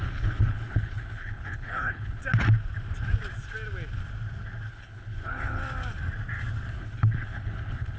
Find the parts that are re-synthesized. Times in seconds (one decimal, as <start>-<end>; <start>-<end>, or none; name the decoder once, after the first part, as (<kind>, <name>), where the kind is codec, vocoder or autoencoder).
0.0-2.2 (codec, HILCodec); 4.7-5.6; 6.7-8.0